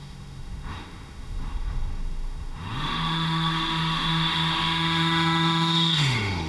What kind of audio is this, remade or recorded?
remade